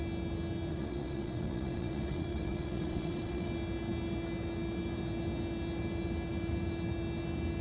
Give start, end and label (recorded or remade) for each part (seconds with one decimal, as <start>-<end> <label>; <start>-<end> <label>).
0.0-0.7 recorded; 0.7-3.5 remade; 3.5-7.6 recorded